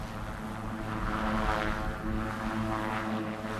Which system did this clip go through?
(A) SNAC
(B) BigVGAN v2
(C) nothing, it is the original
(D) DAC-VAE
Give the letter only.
C